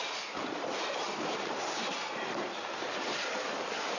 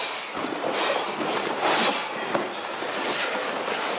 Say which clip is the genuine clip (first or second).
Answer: second